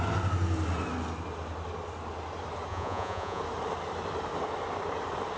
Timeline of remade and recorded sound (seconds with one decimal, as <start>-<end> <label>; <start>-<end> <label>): 0.0-2.7 recorded; 2.7-3.4 remade; 3.4-5.4 recorded